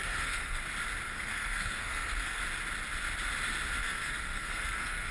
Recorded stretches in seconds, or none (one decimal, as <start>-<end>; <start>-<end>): 0.6-1.1; 2.4-3.8